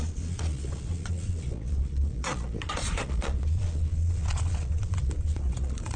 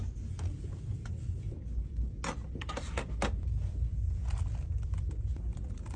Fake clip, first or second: first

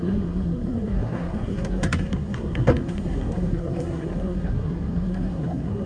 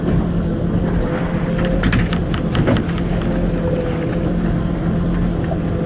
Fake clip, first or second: first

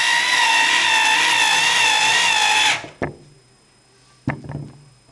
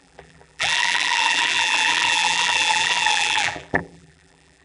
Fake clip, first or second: second